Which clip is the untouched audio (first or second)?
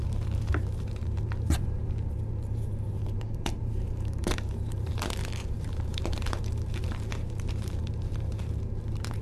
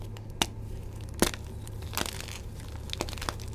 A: second